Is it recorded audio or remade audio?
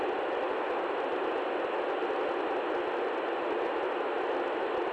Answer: recorded